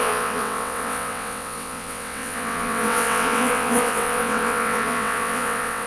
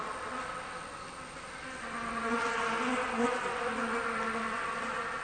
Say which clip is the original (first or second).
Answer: second